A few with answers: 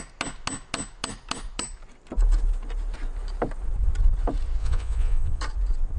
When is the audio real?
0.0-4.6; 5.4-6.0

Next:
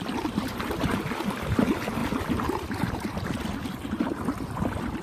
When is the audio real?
0.0-5.0

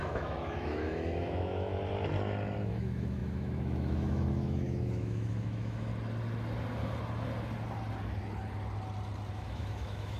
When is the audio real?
1.7-2.6; 5.9-9.3

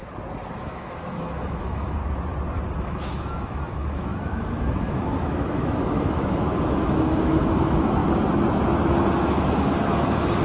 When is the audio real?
0.0-0.6; 2.0-2.8; 8.0-9.2